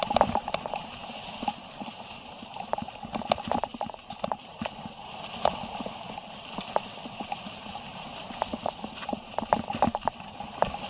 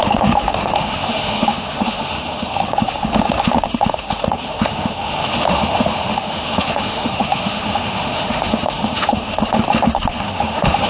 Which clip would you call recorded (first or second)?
first